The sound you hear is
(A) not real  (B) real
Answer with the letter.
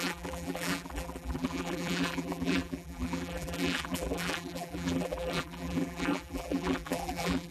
A